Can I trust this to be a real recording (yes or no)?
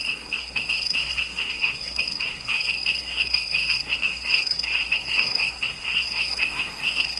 no